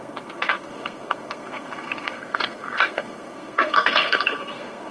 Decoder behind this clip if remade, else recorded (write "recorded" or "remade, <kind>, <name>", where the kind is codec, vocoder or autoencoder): remade, codec, SNAC